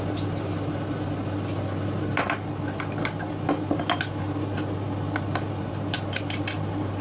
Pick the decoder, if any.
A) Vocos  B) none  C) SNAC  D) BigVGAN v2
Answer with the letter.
B